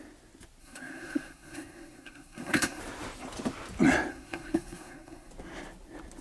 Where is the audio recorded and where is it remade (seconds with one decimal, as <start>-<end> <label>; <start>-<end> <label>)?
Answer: 0.0-0.6 recorded; 0.6-2.8 remade; 2.8-4.1 recorded; 4.1-5.3 remade; 5.3-6.2 recorded